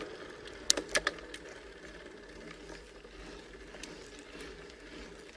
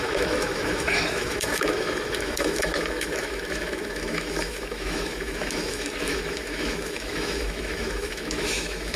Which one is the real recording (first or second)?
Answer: first